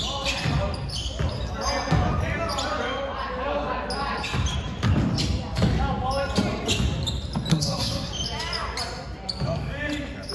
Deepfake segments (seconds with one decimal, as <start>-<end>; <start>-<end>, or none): 7.5-8.1

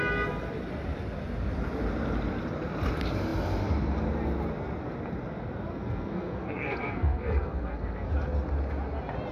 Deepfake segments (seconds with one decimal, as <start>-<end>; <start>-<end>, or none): 5.7-8.1

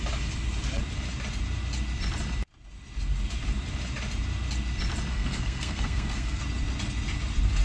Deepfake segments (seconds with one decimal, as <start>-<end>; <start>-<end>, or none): 5.1-6.4

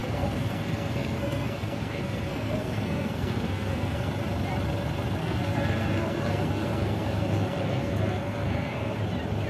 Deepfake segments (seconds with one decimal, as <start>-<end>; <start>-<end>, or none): 0.0-4.1; 5.2-9.0

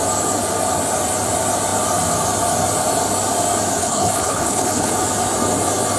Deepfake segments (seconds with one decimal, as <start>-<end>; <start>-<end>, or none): 3.8-4.9

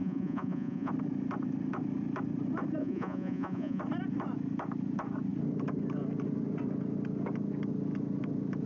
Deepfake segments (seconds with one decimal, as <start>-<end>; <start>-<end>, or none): 0.0-0.9; 2.8-3.8